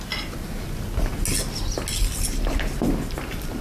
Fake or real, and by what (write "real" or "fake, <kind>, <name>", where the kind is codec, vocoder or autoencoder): real